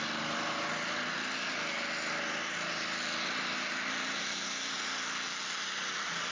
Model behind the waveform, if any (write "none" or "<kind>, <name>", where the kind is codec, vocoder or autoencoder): none